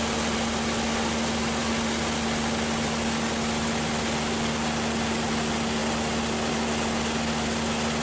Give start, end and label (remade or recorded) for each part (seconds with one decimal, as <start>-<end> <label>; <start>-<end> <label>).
0.0-8.0 recorded